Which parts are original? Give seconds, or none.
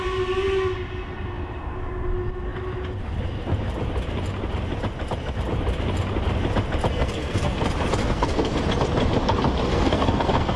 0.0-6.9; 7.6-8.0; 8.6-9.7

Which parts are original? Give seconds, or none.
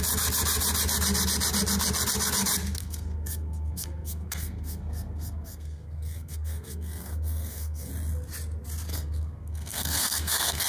0.0-2.8; 7.9-8.9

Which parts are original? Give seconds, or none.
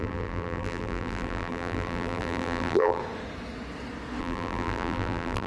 3.0-4.2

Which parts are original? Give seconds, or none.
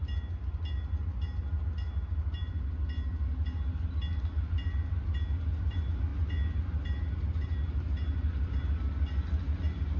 0.0-10.0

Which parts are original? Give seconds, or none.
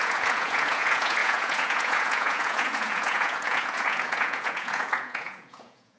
none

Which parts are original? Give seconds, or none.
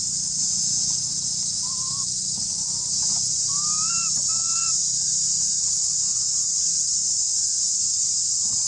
0.0-0.4; 1.9-8.7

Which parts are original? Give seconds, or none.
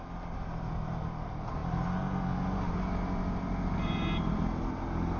0.0-5.2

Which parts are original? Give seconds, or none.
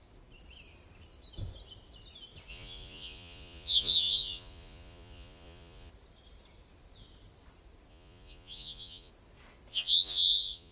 0.0-2.5; 5.9-7.9; 9.1-9.7